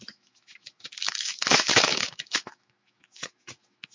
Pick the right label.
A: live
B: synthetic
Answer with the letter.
B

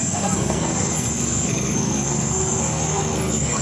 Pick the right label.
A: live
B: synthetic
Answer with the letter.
B